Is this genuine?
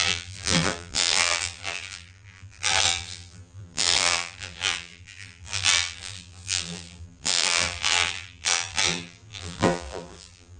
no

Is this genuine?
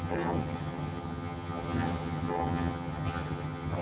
no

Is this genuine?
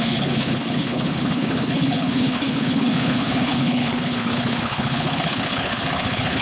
no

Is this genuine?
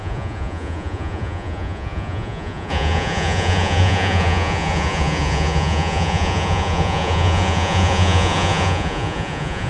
no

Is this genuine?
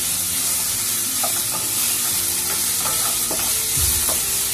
yes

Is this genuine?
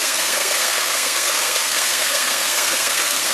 no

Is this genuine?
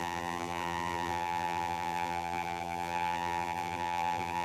no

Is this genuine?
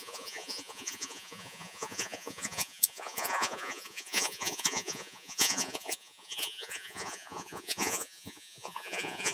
no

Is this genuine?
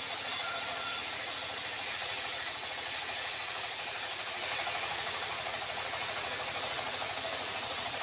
no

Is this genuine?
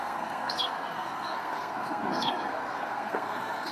no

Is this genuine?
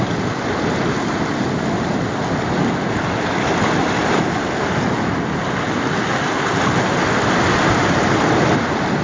yes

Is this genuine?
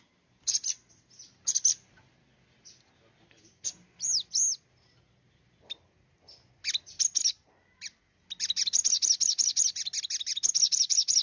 yes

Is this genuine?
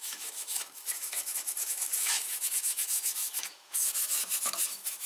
no